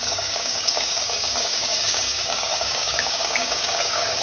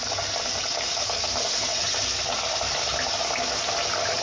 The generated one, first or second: first